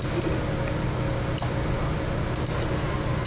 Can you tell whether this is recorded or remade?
recorded